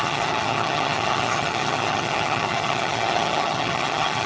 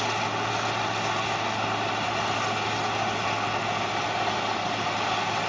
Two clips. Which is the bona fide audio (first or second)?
second